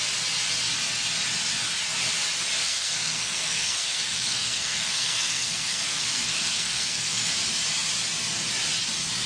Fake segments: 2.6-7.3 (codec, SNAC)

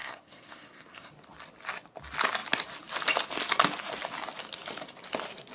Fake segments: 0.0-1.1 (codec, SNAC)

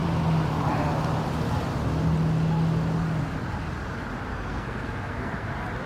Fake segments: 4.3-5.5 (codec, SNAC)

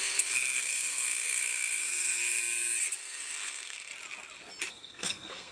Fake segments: 0.0-2.4 (codec, SNAC); 3.0-3.9; 4.7-5.5

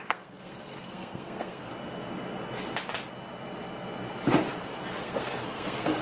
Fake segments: 0.0-1.7 (codec, SNAC); 5.0-6.0